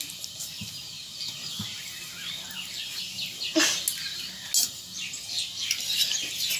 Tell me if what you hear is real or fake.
real